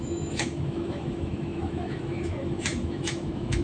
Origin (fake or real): fake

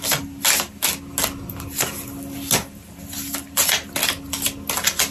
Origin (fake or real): real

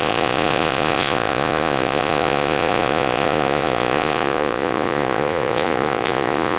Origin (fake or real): fake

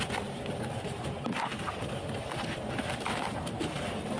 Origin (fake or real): real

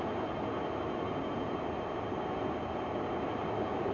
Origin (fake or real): real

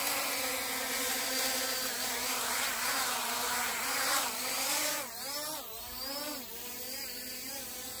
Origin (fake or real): fake